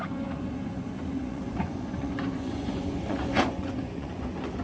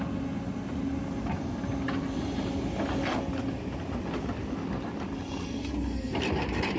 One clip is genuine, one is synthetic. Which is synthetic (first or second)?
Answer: first